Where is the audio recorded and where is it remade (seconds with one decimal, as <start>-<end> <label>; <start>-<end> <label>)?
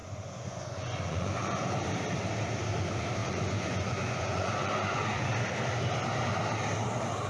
0.0-1.7 remade; 1.7-3.2 recorded; 3.2-5.3 remade; 5.3-7.3 recorded